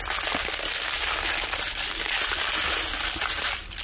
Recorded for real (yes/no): yes